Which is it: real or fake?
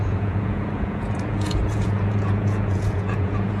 fake